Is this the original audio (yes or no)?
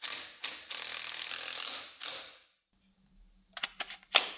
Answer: yes